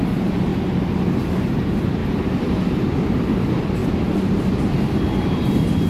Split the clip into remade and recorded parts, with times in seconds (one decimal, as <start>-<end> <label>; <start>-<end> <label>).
0.0-0.5 remade; 0.5-1.4 recorded; 1.4-5.9 remade